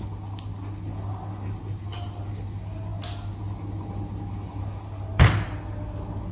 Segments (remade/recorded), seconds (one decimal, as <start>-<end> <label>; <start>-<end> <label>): 0.0-5.1 recorded; 5.1-5.7 remade; 5.7-6.3 recorded